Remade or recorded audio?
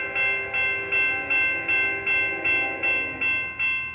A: recorded